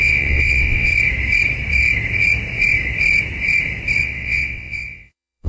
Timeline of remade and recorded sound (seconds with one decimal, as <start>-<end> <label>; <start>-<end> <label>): 0.0-0.9 remade; 0.9-4.0 recorded; 4.0-5.5 remade

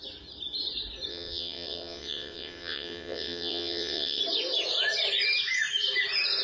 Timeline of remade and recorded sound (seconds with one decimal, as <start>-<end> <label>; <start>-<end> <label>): 0.0-1.1 recorded; 1.1-4.2 remade; 4.2-6.4 recorded